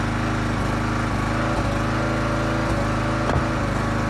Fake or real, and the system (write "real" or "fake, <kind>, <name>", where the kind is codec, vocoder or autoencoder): real